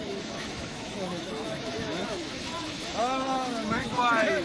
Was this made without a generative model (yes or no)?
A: no